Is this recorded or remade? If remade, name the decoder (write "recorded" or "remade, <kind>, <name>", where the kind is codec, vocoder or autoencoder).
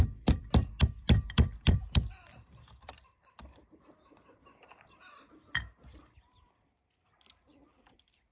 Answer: remade, vocoder, BigVGAN v2